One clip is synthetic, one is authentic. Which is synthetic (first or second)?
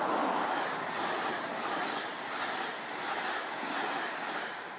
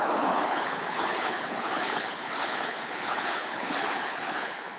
second